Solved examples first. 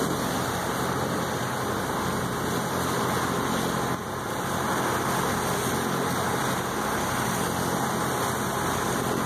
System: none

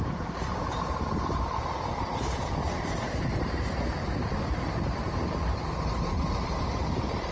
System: vocoder, BigVGAN v2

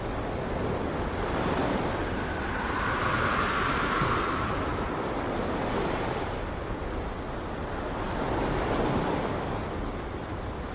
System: none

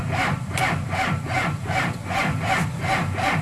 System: vocoder, BigVGAN v2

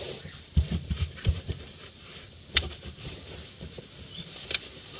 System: vocoder, BigVGAN v2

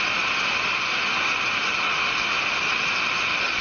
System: none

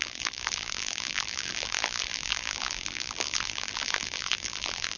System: vocoder, BigVGAN v2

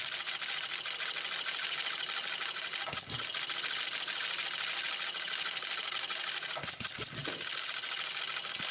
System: none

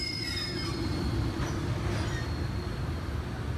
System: none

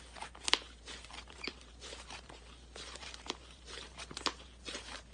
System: vocoder, BigVGAN v2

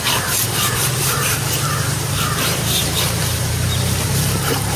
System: vocoder, BigVGAN v2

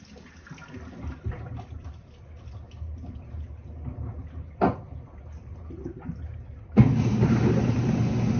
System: none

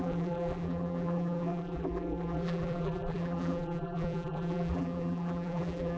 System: vocoder, BigVGAN v2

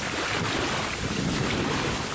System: vocoder, BigVGAN v2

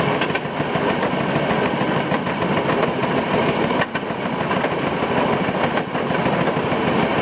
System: none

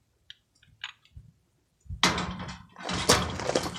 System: none